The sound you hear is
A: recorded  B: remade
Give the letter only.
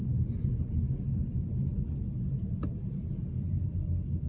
A